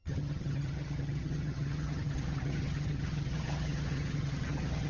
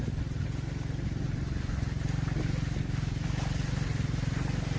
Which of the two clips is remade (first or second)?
first